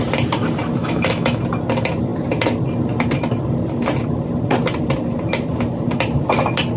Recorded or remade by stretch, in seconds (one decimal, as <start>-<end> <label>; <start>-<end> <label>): 0.0-0.8 recorded; 0.8-1.4 remade; 1.4-6.8 recorded